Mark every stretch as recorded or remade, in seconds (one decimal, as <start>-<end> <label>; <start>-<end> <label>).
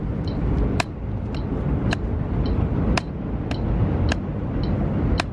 0.0-3.2 remade; 3.2-5.3 recorded